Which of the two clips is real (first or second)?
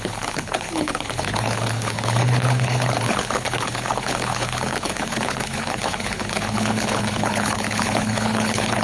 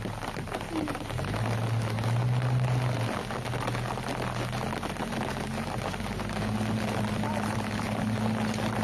second